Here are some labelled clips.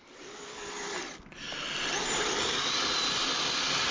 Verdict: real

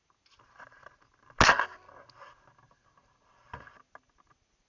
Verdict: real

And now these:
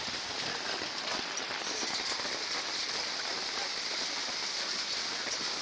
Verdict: fake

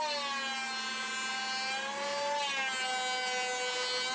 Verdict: real